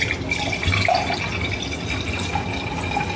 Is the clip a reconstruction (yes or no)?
no